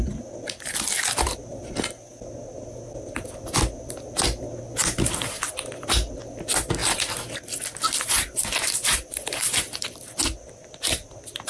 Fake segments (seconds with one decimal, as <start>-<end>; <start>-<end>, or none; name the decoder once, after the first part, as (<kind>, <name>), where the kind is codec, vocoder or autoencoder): none